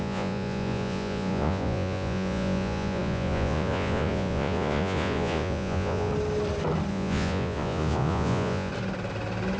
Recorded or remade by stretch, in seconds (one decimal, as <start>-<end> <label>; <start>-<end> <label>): 0.0-6.1 remade; 6.1-6.9 recorded; 6.9-8.7 remade; 8.7-9.6 recorded